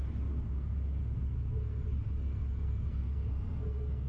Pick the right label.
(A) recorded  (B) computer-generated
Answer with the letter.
B